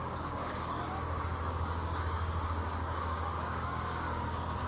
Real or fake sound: fake